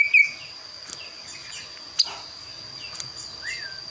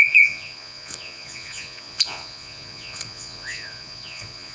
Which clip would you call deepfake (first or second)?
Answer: second